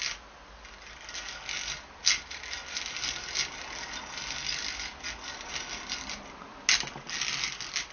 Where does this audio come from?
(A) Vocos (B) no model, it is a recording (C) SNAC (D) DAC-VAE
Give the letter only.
B